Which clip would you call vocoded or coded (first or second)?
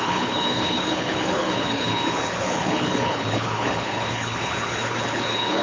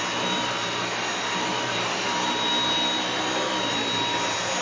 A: first